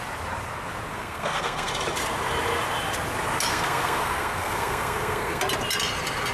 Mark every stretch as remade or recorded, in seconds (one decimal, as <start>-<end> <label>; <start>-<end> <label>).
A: 0.0-0.9 recorded; 0.9-1.7 remade; 1.7-3.5 recorded; 3.5-5.4 remade; 5.4-6.3 recorded